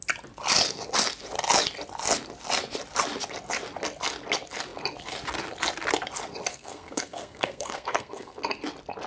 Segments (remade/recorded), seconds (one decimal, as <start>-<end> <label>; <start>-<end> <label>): 0.0-6.5 recorded; 6.5-8.4 remade; 8.4-9.1 recorded